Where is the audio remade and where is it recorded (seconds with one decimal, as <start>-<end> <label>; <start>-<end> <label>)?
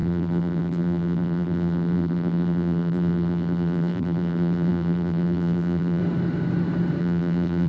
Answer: 0.0-6.0 remade; 6.0-7.0 recorded; 7.0-7.7 remade